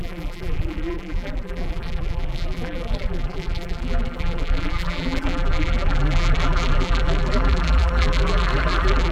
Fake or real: fake